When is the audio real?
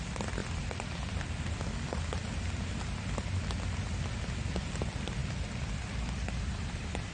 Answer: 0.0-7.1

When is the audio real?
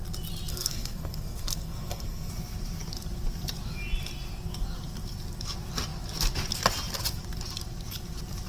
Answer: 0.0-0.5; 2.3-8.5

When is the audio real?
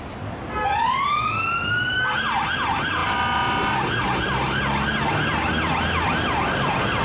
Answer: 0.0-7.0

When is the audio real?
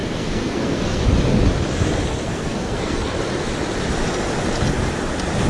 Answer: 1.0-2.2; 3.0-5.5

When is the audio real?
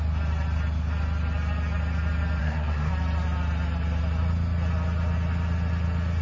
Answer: 0.0-2.4; 2.9-6.2